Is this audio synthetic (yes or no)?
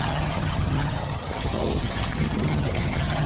yes